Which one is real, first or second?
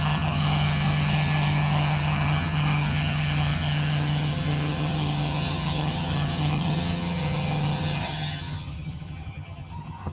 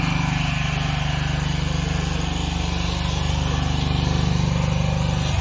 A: second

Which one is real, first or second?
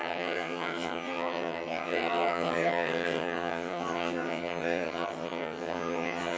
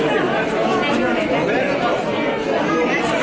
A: second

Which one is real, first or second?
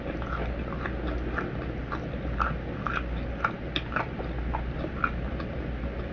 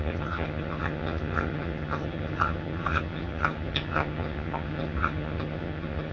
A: first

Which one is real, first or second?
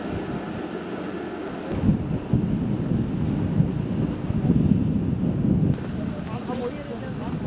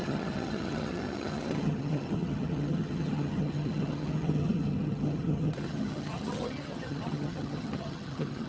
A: first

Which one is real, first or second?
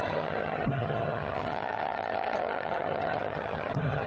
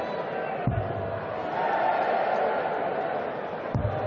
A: second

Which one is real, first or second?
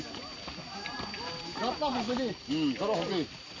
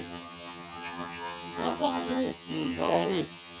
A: first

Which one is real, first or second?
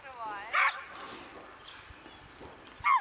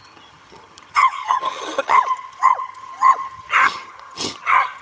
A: first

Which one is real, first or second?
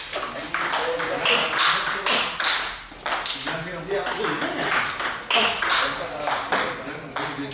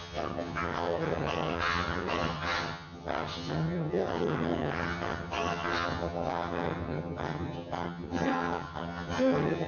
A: first